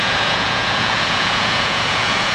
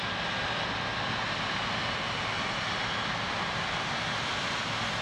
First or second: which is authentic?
second